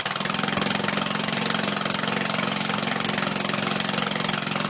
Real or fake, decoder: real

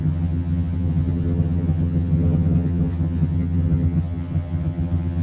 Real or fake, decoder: fake, vocoder, HiFi-GAN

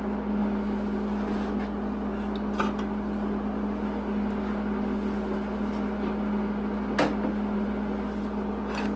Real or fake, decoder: real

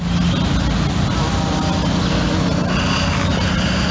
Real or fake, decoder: real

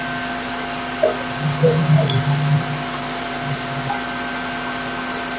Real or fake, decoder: real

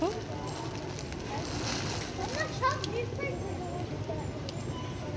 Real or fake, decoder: real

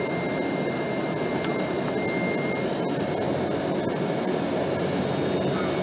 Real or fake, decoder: real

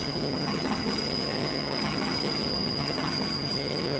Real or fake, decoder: fake, vocoder, HiFi-GAN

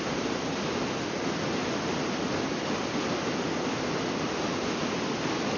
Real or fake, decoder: real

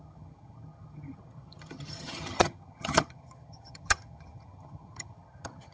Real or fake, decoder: fake, vocoder, HiFi-GAN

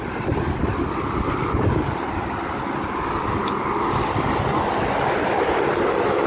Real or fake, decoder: real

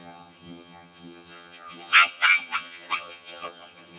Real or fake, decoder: fake, vocoder, HiFi-GAN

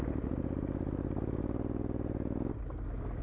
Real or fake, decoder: real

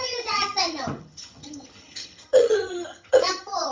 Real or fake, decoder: fake, vocoder, HiFi-GAN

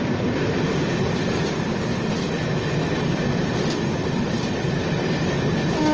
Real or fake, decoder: real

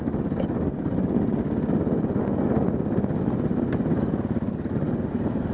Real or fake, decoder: real